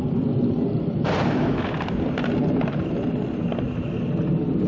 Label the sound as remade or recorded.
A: recorded